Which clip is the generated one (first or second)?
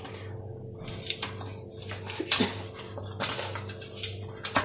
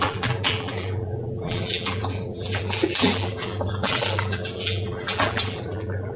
second